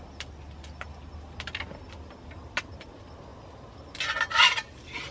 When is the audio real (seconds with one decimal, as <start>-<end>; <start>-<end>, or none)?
0.0-5.1